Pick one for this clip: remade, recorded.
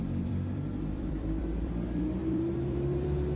remade